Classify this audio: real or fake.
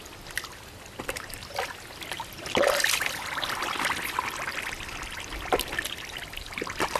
real